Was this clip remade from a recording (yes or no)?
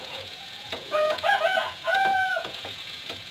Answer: yes